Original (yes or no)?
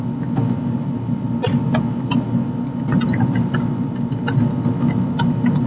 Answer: yes